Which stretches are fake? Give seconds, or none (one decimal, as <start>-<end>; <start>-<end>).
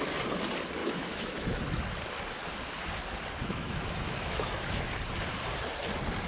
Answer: 0.8-1.6; 3.4-4.9